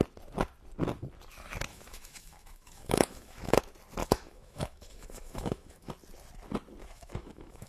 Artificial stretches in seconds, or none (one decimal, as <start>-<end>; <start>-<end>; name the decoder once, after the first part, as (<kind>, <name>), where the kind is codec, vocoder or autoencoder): 1.7-3.6 (autoencoder, DAC-VAE); 4.0-5.9; 6.8-7.7